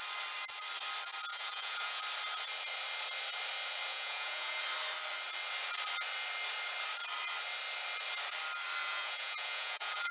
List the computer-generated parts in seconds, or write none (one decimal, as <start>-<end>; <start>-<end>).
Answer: 1.3-2.0; 3.9-4.6; 8.8-10.1